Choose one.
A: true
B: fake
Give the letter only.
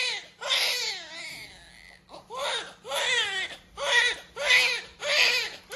A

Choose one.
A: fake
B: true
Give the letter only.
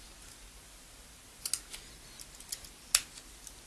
B